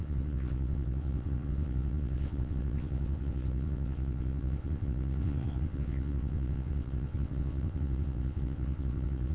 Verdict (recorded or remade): remade